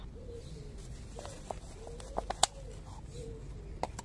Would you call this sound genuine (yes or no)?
yes